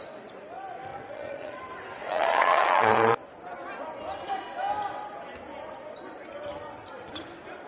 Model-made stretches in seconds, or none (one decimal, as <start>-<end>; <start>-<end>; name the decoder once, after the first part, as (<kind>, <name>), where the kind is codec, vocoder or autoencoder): 0.9-1.6 (vocoder, Vocos); 2.0-3.2